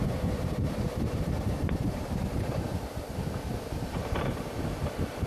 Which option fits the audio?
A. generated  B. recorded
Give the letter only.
A